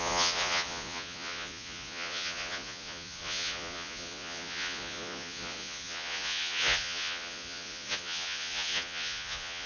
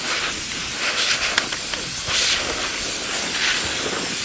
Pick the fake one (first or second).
first